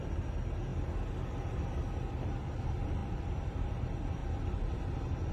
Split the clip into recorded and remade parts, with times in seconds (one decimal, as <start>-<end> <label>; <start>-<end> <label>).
0.0-3.0 recorded; 3.0-3.7 remade; 3.7-4.2 recorded; 4.2-5.3 remade